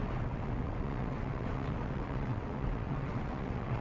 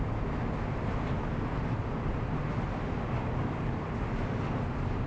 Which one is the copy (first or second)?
first